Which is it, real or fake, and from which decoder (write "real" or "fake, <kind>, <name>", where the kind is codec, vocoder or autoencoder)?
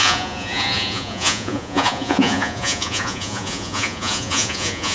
fake, vocoder, Vocos